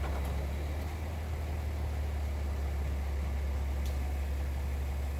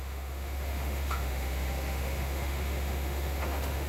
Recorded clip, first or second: first